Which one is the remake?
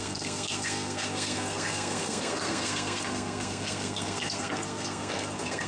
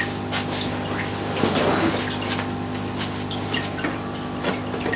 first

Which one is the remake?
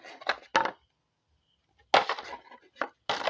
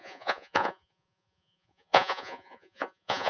second